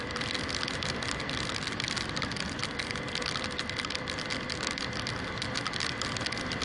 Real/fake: real